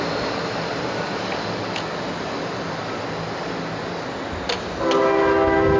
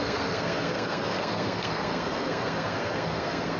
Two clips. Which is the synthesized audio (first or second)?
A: second